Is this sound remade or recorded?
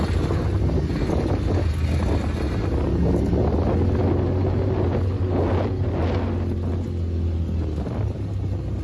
recorded